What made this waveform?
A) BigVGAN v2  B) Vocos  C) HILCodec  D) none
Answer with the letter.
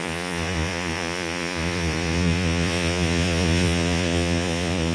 B